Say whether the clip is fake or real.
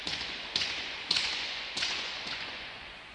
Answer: fake